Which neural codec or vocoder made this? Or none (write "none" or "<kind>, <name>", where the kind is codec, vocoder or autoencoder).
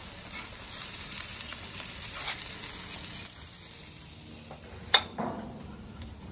none